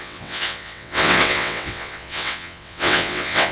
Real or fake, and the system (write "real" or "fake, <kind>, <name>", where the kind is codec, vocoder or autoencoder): fake, vocoder, WaveNeXt